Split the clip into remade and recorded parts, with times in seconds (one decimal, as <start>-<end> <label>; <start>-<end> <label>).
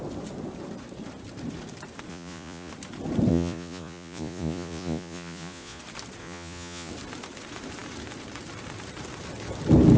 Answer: 0.0-2.1 recorded; 2.1-2.7 remade; 2.7-3.3 recorded; 3.3-5.8 remade; 5.8-6.2 recorded; 6.2-6.9 remade; 6.9-10.0 recorded